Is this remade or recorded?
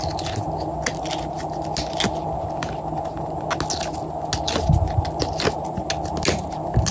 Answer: recorded